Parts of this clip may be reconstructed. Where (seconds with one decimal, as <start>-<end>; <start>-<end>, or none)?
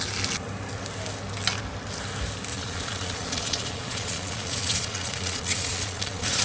2.5-6.4